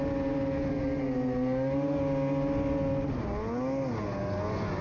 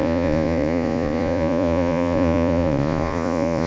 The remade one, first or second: second